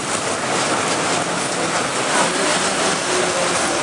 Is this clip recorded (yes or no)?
yes